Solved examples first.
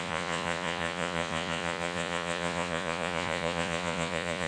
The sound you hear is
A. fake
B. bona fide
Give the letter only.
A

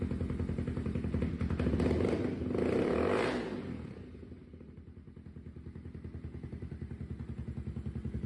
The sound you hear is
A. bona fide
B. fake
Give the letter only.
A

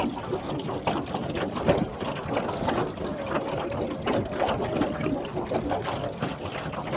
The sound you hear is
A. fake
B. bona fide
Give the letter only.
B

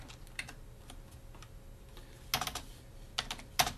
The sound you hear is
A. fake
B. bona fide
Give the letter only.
B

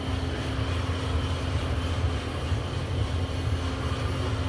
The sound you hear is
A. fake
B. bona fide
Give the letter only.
B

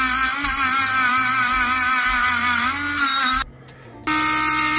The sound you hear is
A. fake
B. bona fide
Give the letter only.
B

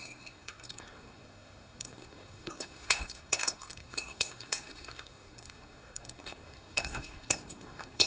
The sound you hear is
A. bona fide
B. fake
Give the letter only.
B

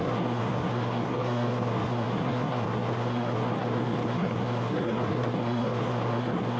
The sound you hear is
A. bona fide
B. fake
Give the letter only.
B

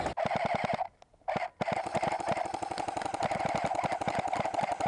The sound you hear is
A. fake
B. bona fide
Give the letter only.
B